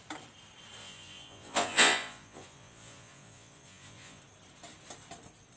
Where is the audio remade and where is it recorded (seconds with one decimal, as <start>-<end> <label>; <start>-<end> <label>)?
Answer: 0.0-0.8 recorded; 0.8-4.2 remade; 4.2-5.6 recorded